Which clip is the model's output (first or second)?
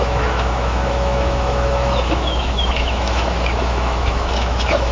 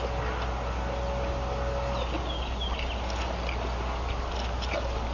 first